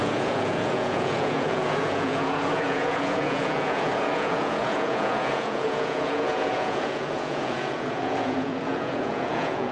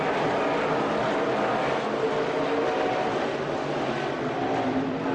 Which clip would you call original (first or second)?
second